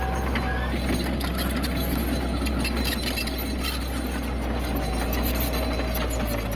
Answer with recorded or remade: recorded